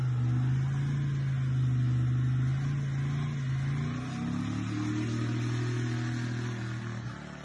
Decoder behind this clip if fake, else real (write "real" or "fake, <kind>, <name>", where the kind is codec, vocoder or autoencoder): real